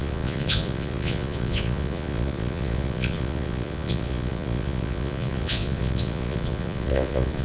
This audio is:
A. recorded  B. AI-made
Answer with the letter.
B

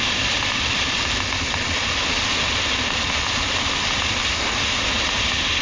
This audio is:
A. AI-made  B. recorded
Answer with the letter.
B